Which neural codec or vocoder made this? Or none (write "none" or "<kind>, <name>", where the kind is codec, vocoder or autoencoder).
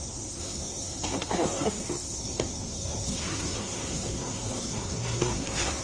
codec, SNAC